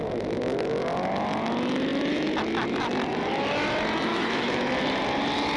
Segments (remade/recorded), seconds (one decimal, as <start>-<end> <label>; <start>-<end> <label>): 0.0-4.1 recorded; 4.1-4.7 remade; 4.7-5.6 recorded